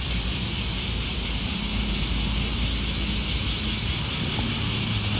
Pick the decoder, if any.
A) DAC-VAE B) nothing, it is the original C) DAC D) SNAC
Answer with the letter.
B